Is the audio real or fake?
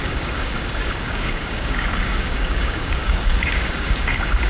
fake